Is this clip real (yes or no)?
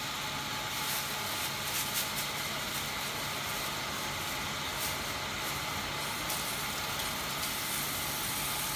yes